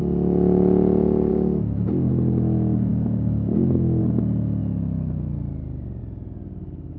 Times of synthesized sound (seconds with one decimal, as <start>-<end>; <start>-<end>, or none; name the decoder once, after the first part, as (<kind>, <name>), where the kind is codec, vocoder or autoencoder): 1.3-2.1 (codec, DAC); 2.9-4.0